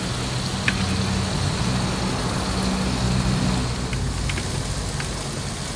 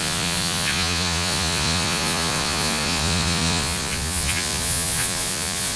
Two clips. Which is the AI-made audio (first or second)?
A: second